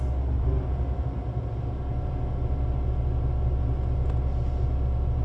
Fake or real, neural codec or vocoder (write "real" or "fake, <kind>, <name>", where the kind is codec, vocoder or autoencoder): real